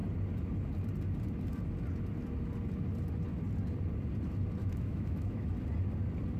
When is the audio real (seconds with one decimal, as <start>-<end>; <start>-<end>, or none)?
0.0-4.6; 5.5-6.4